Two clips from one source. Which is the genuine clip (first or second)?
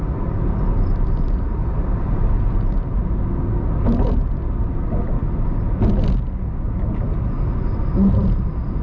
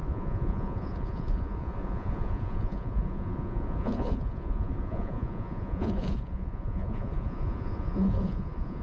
first